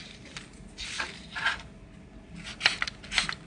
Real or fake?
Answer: real